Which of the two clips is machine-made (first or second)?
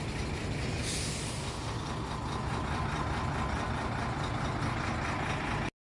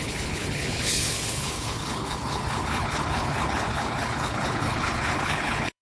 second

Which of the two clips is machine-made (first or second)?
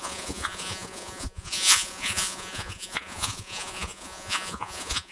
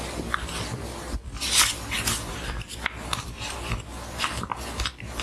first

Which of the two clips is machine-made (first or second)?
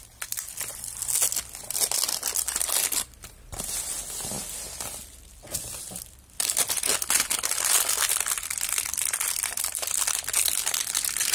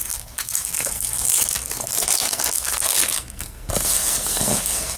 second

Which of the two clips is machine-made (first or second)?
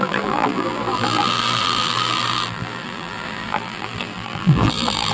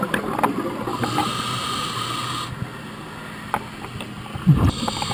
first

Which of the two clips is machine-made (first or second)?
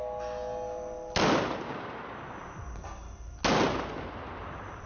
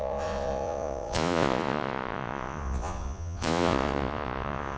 second